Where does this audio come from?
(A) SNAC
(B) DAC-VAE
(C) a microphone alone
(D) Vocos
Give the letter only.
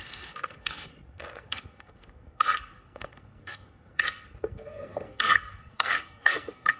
A